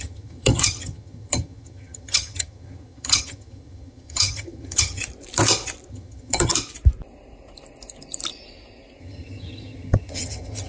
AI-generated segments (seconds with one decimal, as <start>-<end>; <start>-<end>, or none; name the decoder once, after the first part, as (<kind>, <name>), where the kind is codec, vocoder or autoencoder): 0.0-5.0 (vocoder, HiFi-GAN); 5.9-6.5; 9.0-10.7